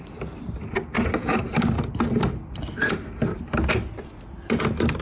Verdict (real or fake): real